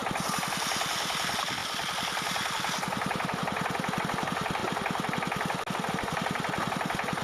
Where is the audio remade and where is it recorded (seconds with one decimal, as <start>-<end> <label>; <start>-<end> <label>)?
0.0-7.2 recorded